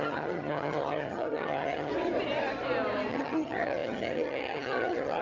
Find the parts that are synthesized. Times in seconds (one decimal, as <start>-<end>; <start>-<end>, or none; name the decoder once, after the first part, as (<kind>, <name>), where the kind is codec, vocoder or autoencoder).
0.0-1.9 (vocoder, HiFi-GAN); 3.1-5.2